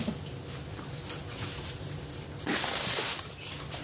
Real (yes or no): yes